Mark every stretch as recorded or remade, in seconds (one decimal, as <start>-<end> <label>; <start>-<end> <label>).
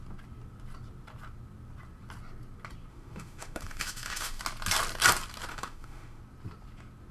0.0-2.9 recorded; 2.9-4.4 remade; 4.4-5.5 recorded; 5.5-6.2 remade; 6.2-7.1 recorded